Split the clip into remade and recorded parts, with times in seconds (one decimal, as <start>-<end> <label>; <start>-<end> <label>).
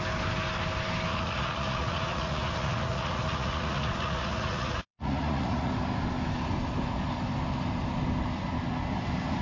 0.0-1.1 recorded; 1.1-5.7 remade; 5.7-9.4 recorded